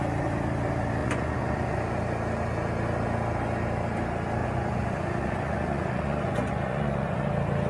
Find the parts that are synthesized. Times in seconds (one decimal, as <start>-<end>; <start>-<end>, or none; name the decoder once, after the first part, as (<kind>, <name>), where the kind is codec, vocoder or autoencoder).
1.0-1.8 (vocoder, Vocos); 4.4-7.3